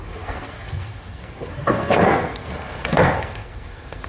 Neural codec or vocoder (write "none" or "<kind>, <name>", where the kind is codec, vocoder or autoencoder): codec, SNAC